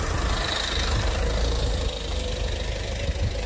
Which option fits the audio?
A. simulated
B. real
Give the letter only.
B